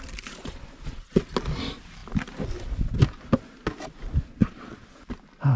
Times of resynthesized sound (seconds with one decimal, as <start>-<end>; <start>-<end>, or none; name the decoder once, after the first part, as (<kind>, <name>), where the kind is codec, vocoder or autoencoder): 0.4-1.2 (vocoder, Vocos); 4.4-5.0